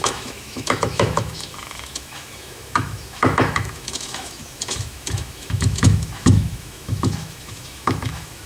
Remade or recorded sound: remade